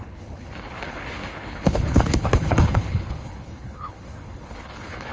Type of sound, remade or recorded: remade